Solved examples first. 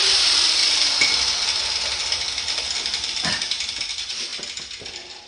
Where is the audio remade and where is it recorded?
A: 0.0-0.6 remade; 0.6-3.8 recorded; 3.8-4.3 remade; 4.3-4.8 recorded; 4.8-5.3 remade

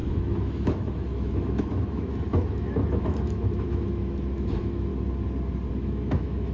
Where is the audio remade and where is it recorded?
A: 0.0-4.9 remade; 4.9-5.7 recorded; 5.7-6.5 remade

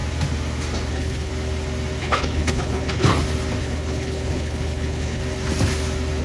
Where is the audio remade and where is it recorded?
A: 0.0-0.9 recorded; 0.9-1.3 remade; 1.3-2.0 recorded; 2.0-3.1 remade; 3.1-3.6 recorded; 3.6-5.2 remade; 5.2-6.2 recorded

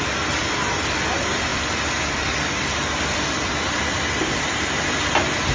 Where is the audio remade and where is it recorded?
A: 0.0-5.5 recorded

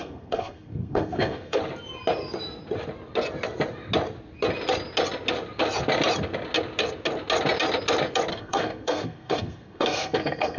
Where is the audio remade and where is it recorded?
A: 0.0-1.6 remade; 1.6-8.3 recorded; 8.3-10.6 remade

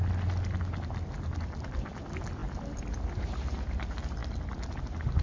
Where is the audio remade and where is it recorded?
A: 0.0-5.2 recorded

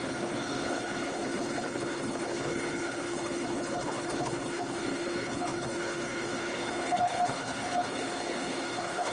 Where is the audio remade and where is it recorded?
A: 0.0-9.1 remade